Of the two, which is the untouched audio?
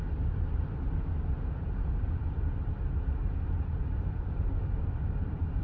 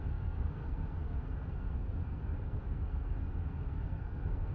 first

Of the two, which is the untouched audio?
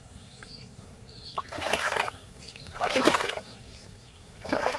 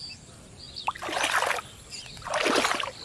second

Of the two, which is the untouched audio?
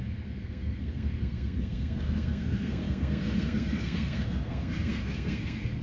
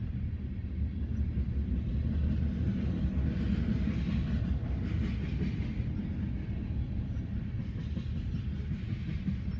second